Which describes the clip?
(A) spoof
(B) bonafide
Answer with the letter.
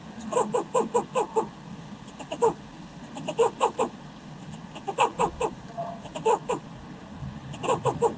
B